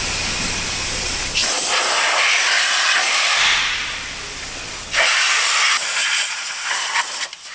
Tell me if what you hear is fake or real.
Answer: real